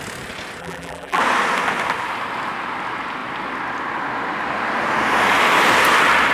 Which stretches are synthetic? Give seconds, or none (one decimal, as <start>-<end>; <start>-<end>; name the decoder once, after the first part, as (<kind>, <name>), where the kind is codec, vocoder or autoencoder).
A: 0.6-1.2 (vocoder, BigVGAN v2)

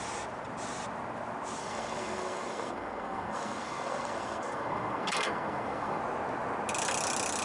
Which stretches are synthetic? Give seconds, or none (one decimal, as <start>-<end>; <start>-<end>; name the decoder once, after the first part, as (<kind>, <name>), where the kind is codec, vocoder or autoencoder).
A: 1.6-6.0 (codec, SNAC)